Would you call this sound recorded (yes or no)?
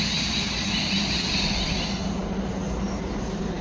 yes